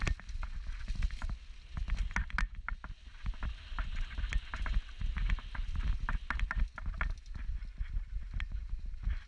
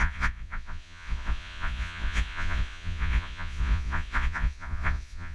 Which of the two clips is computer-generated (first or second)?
second